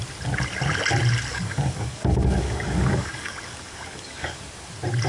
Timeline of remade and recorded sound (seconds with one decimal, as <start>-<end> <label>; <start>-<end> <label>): 0.0-1.3 recorded; 1.3-4.4 remade; 4.4-5.1 recorded